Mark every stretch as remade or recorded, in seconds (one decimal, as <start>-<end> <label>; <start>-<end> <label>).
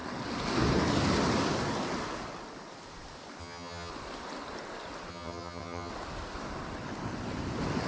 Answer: 0.0-3.4 recorded; 3.4-3.9 remade; 3.9-5.1 recorded; 5.1-5.9 remade; 5.9-7.9 recorded